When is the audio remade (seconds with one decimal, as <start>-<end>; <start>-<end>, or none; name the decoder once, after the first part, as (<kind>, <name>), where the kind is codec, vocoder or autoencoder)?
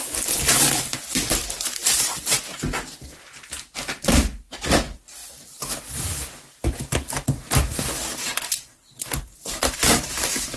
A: none